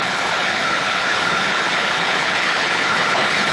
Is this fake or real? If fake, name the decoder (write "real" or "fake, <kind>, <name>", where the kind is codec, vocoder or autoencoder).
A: fake, codec, HILCodec